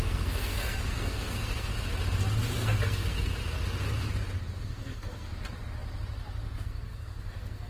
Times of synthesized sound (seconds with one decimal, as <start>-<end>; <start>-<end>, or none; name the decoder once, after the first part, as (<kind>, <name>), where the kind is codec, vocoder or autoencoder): 0.0-1.7 (codec, SNAC); 2.5-3.3; 4.6-5.3; 6.6-7.7